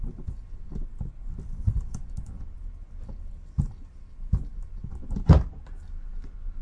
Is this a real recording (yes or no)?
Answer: yes